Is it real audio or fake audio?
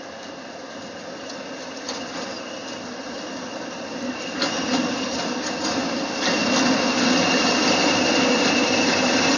real